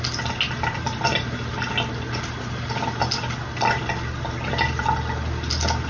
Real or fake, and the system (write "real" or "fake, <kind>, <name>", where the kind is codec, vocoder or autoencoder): real